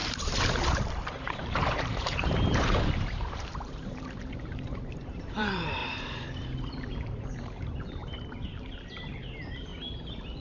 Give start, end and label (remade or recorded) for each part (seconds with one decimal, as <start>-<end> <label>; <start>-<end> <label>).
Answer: 0.0-9.7 remade; 9.7-10.4 recorded